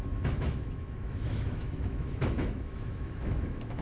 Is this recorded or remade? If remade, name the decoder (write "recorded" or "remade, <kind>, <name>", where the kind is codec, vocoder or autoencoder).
remade, autoencoder, DAC-VAE